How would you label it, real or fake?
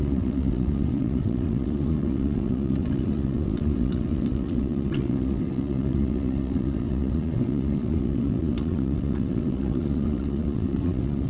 fake